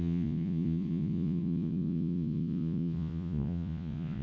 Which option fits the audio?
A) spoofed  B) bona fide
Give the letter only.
A